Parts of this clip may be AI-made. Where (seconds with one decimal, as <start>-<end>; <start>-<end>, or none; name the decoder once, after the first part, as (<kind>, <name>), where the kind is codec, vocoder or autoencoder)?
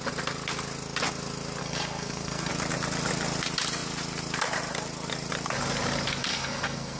1.6-2.5 (codec, SNAC); 6.2-7.0